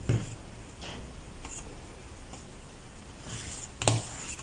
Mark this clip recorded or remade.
recorded